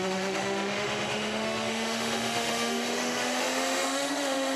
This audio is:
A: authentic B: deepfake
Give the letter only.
B